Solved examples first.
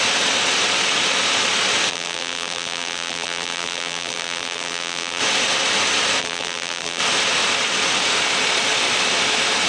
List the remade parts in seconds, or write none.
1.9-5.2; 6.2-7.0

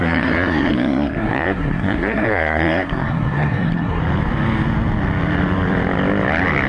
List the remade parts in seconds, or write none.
0.0-4.0

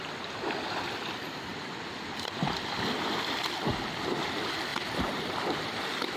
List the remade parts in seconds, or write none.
1.5-2.4; 4.7-5.8

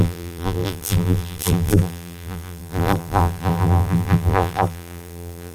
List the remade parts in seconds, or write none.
0.0-5.5

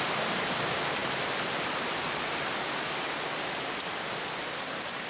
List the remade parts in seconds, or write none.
none

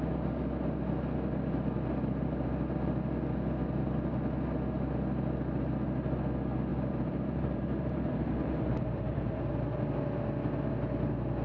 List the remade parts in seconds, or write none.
6.7-9.5

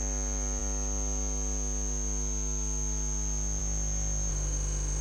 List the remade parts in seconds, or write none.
4.3-5.0

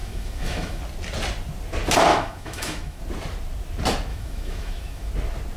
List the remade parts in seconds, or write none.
0.0-0.8; 2.1-3.0; 4.1-5.1